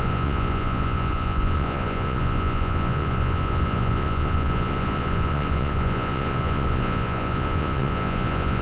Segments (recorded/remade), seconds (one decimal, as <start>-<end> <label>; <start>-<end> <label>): 0.0-8.6 remade